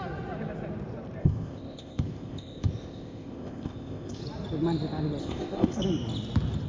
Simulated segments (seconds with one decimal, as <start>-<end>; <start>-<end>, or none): 1.2-4.2; 5.2-5.8